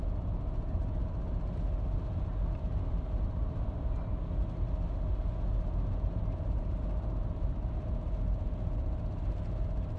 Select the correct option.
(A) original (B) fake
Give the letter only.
A